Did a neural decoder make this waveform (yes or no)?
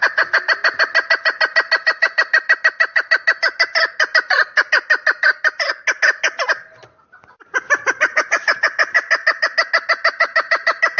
no